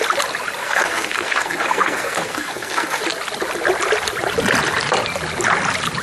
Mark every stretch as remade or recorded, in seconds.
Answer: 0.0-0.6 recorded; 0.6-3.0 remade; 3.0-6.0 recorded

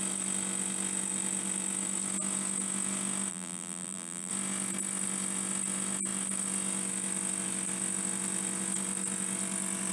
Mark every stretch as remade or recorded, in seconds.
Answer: 0.0-3.3 recorded; 3.3-4.3 remade; 4.3-9.9 recorded

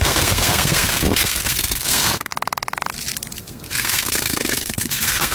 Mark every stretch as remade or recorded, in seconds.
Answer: 0.0-2.3 remade; 2.3-3.4 recorded; 3.4-5.3 remade

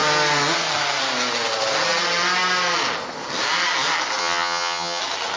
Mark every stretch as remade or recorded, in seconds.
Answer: 0.0-4.2 recorded; 4.2-5.0 remade; 5.0-5.4 recorded